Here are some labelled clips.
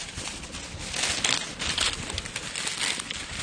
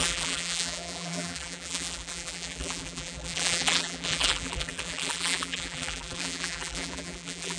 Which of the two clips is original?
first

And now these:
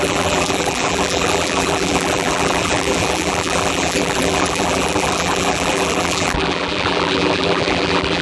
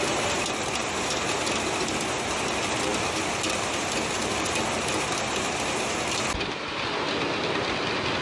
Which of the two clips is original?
second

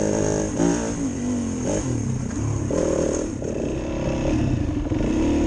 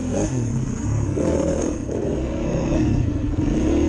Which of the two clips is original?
first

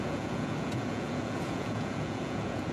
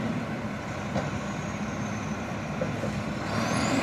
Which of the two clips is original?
second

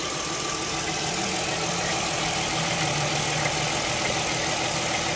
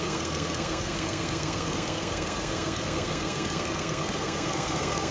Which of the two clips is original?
first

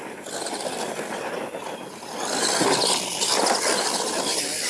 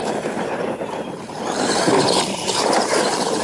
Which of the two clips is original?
first